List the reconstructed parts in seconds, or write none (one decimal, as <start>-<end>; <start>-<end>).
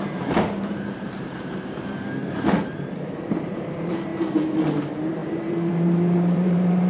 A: 0.0-6.9